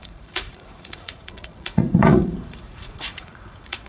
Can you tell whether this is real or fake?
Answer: fake